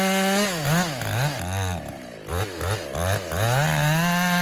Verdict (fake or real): real